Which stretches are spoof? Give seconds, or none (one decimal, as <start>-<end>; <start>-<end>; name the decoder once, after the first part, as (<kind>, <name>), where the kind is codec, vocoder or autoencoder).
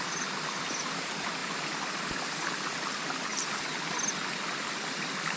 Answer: none